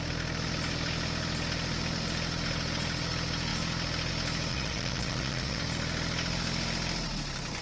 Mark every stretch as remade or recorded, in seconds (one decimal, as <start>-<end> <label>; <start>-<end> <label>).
0.0-4.5 recorded; 4.5-5.6 remade; 5.6-7.6 recorded